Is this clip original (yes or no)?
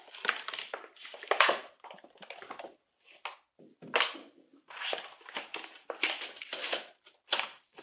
yes